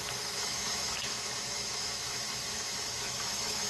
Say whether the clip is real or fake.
fake